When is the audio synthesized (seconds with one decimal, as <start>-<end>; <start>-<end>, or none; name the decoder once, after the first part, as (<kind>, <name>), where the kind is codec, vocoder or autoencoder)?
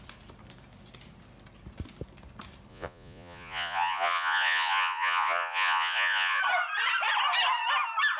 2.7-6.4 (vocoder, Vocos)